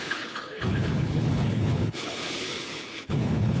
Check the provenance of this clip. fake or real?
fake